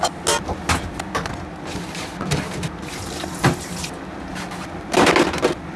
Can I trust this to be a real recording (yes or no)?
yes